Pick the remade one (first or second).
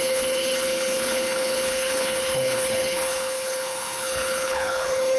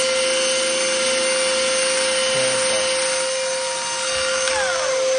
first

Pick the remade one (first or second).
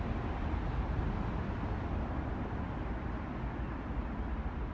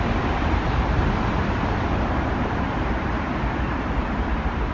second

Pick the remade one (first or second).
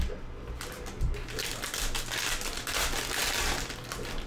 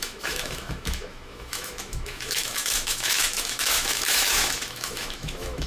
second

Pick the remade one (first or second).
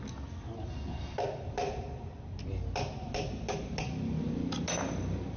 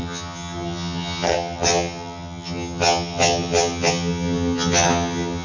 second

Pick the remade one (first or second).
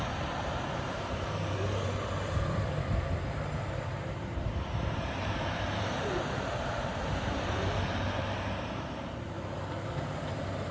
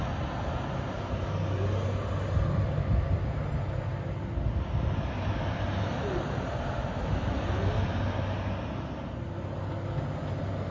first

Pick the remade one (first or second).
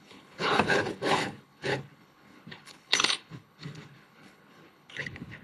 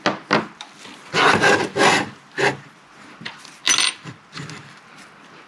first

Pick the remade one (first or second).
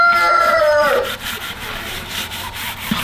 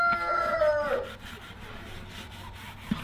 first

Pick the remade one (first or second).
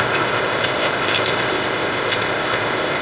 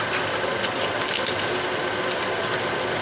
first